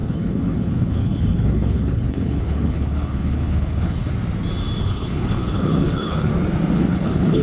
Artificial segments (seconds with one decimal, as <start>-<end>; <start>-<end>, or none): 0.0-4.1; 4.8-6.3; 6.8-7.4